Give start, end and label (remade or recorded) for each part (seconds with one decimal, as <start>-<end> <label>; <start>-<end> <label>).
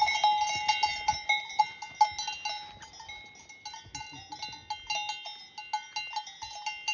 0.0-6.9 recorded